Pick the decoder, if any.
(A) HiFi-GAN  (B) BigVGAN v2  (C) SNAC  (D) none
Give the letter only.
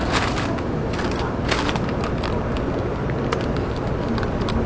D